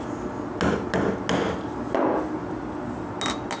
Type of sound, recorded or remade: recorded